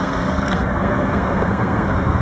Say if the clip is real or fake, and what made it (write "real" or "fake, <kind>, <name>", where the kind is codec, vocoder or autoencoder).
fake, codec, SNAC